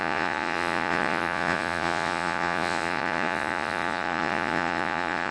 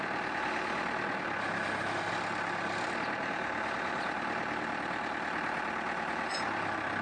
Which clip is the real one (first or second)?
second